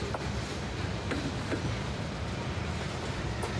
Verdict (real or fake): real